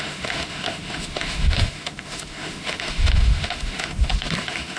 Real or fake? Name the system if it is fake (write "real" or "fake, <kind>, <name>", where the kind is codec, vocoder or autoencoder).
fake, autoencoder, DAC-VAE